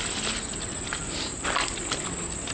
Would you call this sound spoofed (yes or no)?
no